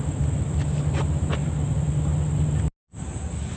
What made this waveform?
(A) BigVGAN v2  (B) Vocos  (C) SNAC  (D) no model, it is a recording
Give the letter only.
D